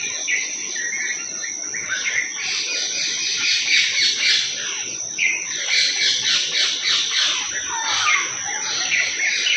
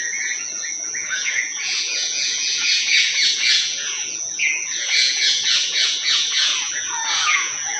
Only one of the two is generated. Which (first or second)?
second